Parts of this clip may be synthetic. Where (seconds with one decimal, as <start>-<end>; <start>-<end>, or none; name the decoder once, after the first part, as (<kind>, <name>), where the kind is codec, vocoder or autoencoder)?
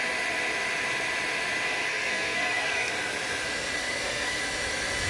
1.9-2.9 (codec, SNAC); 3.8-4.4